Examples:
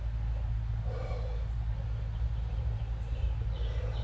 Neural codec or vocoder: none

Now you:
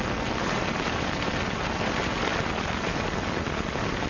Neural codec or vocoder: none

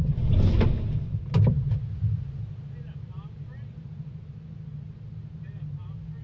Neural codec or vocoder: none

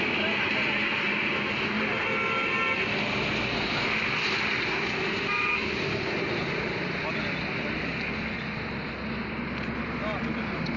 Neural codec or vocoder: none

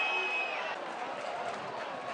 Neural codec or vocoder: none